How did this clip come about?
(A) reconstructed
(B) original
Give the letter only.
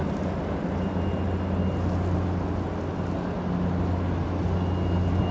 B